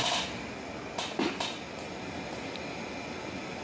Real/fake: real